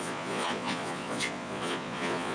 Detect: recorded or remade remade